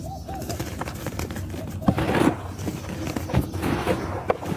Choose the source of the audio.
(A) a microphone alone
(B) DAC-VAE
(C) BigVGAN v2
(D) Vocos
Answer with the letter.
A